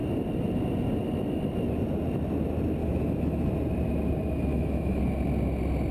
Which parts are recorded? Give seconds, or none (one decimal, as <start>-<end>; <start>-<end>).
0.0-2.8; 3.5-4.5; 5.0-5.9